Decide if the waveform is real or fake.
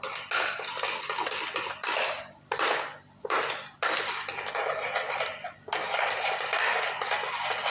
real